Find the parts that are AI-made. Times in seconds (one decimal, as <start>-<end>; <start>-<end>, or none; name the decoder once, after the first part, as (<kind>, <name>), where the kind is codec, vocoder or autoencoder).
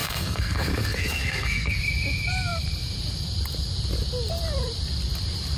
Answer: 0.0-1.8 (codec, SNAC)